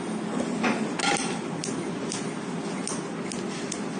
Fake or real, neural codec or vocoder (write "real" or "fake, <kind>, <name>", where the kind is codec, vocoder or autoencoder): real